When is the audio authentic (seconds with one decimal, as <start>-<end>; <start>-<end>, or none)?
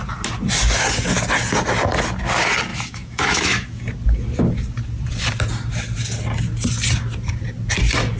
0.0-2.7; 3.8-8.2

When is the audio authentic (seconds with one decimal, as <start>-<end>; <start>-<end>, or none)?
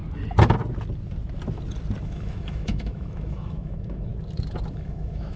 0.0-2.0; 4.1-4.7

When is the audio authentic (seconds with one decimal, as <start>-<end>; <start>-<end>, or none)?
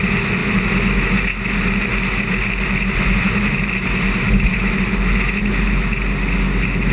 0.0-6.9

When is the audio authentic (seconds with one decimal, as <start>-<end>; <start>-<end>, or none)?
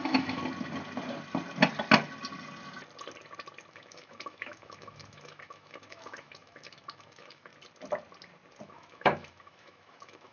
0.4-3.7; 7.5-8.6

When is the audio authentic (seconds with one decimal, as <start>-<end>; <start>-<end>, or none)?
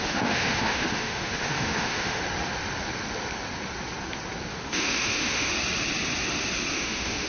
2.2-4.5; 5.5-6.7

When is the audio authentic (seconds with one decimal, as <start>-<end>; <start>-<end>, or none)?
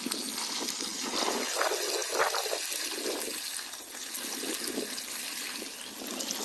0.0-6.4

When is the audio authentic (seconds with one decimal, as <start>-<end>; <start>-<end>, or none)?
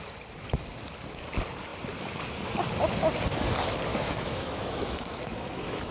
0.0-3.9